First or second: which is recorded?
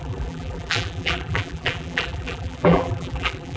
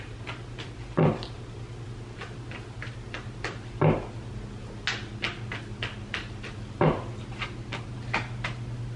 second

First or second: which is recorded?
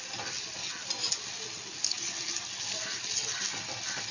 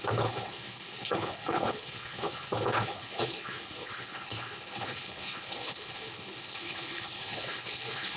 first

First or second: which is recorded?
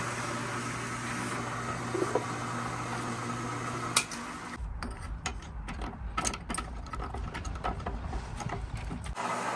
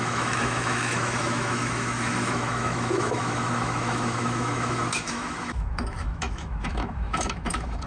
first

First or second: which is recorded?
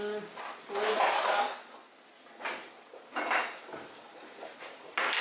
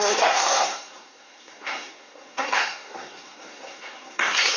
first